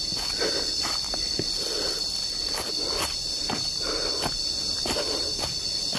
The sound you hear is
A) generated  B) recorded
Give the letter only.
B